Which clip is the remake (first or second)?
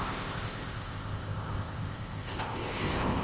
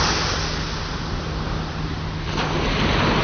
first